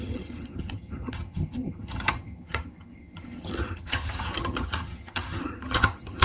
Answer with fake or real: fake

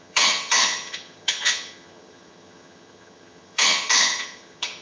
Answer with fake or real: fake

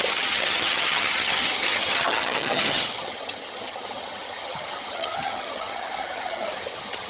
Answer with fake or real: fake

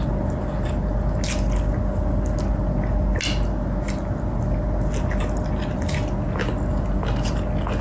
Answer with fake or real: real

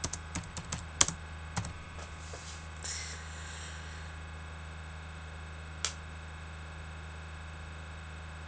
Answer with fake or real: real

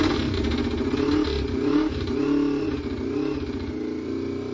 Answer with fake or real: real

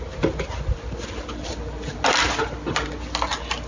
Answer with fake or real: real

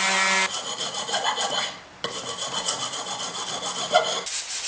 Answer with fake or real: real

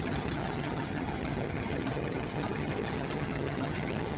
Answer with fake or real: fake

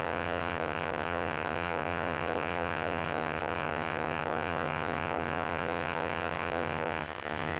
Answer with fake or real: fake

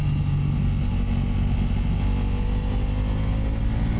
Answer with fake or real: real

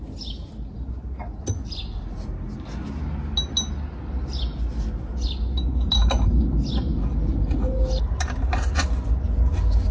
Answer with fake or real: real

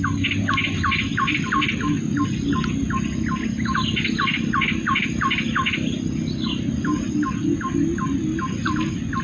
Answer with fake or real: real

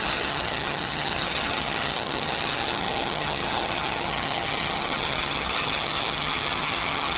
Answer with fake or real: fake